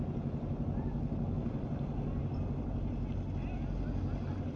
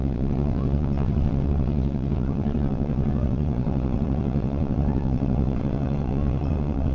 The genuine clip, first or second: first